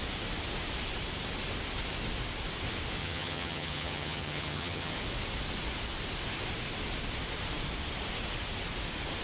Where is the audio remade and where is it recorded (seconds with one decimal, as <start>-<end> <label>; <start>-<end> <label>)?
0.0-3.0 recorded; 3.0-4.9 remade; 4.9-9.2 recorded